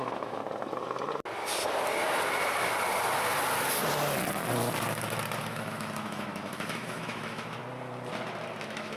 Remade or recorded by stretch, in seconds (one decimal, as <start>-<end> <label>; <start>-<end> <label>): 0.0-0.4 remade; 0.4-5.4 recorded; 5.4-7.6 remade; 7.6-8.6 recorded; 8.6-9.0 remade